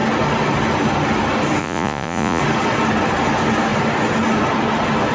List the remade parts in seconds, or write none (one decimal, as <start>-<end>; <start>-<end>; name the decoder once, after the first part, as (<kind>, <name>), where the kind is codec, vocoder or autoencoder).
1.6-2.4 (vocoder, Vocos)